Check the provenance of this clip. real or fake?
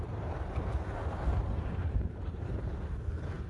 fake